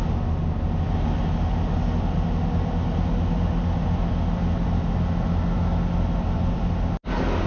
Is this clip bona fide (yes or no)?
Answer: yes